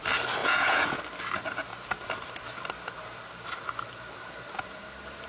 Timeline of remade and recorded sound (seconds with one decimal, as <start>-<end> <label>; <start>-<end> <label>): 0.0-0.4 recorded; 0.4-1.0 remade; 1.0-5.3 recorded